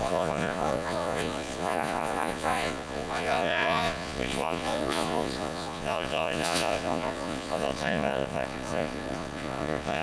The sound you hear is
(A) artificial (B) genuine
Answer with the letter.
A